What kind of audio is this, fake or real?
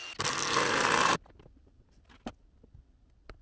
real